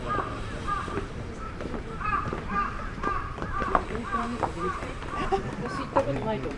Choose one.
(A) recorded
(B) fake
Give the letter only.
B